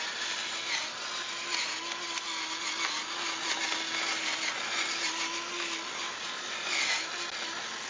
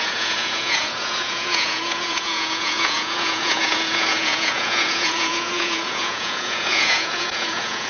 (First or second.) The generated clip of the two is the second